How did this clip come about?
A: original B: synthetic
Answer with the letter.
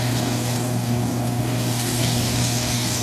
B